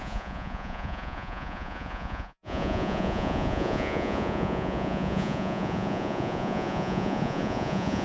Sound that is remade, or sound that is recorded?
remade